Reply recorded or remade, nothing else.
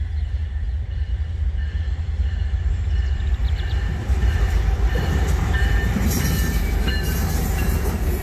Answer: remade